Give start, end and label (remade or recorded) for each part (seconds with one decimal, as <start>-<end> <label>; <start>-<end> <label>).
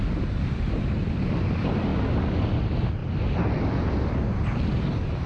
0.0-5.3 recorded